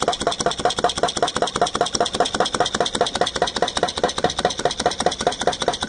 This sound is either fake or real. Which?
real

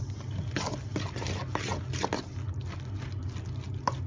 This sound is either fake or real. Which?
real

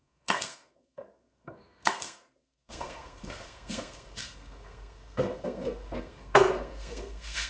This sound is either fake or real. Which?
fake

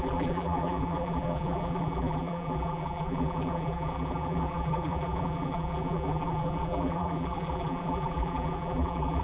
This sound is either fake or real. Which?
fake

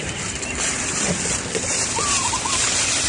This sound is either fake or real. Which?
fake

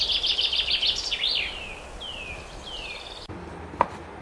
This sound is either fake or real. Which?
real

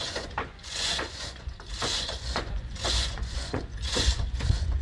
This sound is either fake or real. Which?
fake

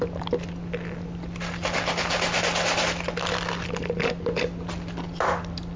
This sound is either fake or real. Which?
real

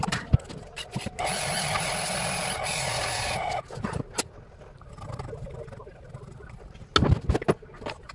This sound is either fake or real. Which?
real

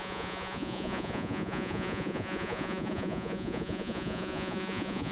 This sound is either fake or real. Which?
fake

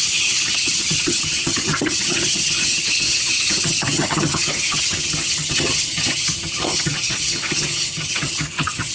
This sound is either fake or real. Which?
fake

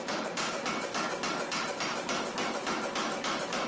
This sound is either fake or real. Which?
real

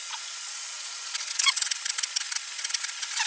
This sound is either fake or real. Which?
fake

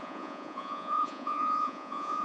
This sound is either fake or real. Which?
fake